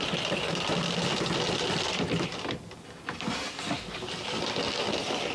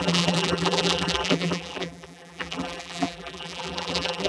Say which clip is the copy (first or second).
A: second